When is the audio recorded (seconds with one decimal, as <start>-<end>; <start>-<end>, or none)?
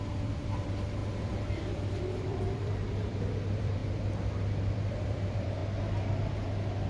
3.8-4.6; 5.6-6.9